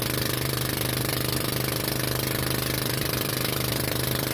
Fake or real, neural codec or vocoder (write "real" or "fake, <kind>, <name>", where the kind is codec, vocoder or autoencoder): fake, vocoder, BigVGAN v2